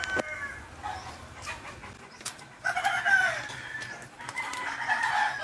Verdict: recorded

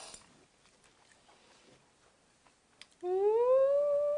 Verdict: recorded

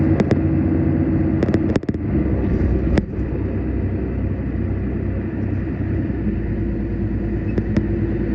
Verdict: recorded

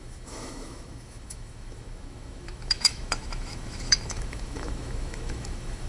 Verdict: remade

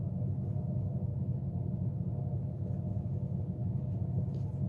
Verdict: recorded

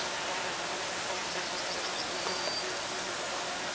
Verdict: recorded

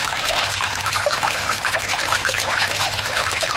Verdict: remade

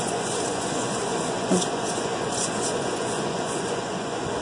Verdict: remade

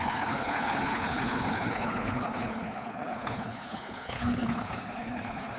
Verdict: remade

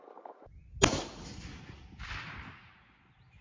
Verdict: recorded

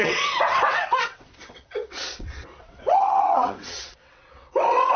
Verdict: remade